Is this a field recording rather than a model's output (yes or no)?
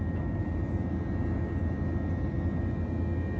yes